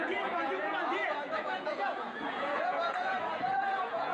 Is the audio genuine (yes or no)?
no